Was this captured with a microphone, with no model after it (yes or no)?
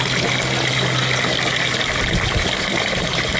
yes